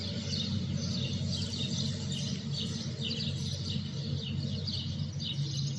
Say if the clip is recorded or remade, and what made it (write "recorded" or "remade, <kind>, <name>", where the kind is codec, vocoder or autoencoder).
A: recorded